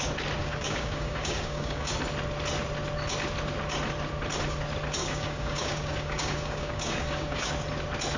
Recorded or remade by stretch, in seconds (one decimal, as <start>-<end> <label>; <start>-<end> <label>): 0.0-0.4 recorded; 0.4-1.9 remade; 1.9-5.0 recorded; 5.0-7.5 remade; 7.5-8.2 recorded